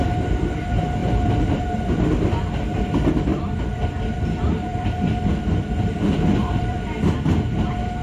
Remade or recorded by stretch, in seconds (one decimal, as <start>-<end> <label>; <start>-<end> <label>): 0.0-1.0 recorded; 1.0-1.6 remade; 1.6-4.7 recorded; 4.7-7.0 remade; 7.0-8.0 recorded